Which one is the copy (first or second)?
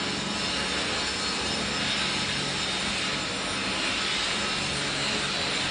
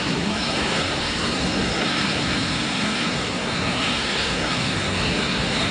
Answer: second